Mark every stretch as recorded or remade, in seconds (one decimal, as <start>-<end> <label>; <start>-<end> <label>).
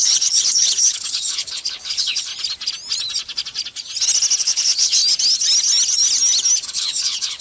0.0-2.3 remade; 2.3-4.4 recorded; 4.4-5.0 remade; 5.0-6.7 recorded; 6.7-7.4 remade